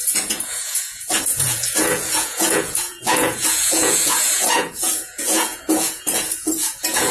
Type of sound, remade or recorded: remade